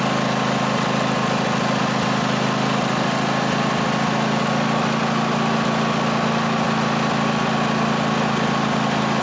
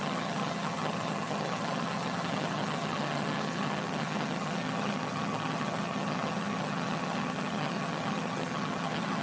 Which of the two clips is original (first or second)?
first